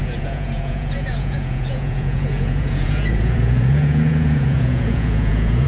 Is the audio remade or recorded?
remade